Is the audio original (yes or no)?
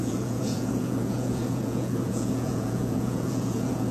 no